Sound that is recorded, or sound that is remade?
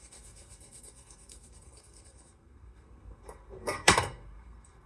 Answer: remade